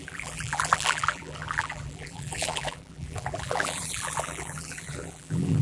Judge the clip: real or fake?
fake